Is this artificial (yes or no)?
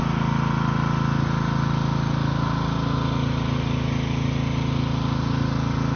no